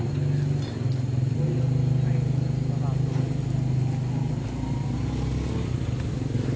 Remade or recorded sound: recorded